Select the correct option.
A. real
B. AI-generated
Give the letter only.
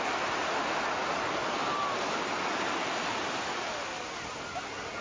A